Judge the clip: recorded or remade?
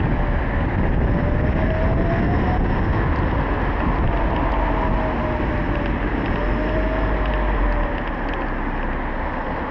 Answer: recorded